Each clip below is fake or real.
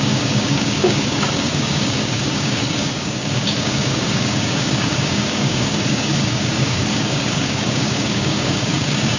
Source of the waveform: fake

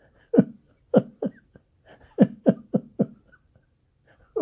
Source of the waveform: real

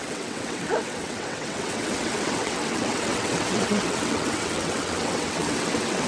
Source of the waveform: fake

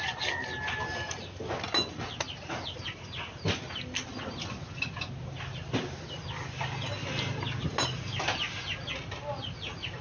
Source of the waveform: real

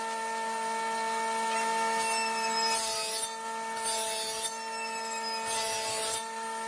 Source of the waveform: real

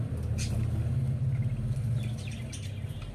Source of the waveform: real